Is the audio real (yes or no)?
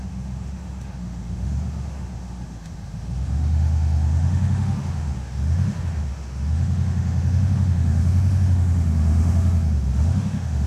no